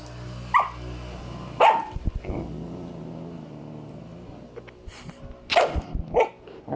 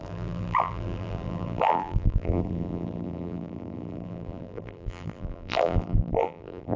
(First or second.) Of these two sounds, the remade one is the second